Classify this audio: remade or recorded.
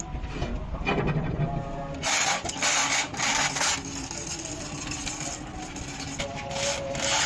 recorded